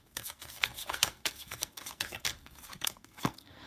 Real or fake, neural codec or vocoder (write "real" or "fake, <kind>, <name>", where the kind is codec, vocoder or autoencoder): fake, codec, SNAC